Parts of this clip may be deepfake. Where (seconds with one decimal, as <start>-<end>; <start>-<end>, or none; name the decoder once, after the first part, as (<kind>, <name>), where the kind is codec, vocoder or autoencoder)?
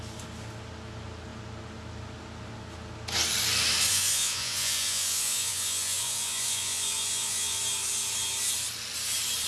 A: 3.9-7.6 (vocoder, Vocos)